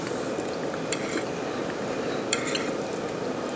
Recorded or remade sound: remade